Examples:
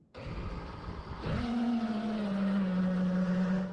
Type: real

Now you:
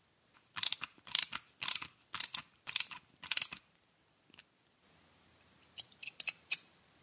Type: real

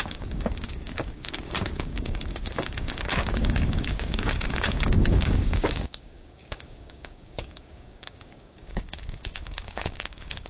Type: fake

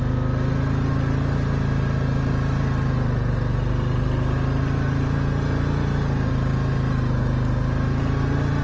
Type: real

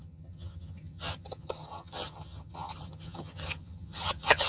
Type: fake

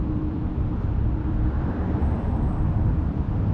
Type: fake